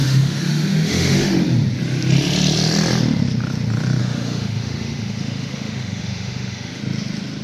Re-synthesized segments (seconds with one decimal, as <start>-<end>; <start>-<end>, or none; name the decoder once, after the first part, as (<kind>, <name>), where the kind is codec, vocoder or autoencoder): 0.0-1.4 (autoencoder, DAC-VAE); 4.0-6.8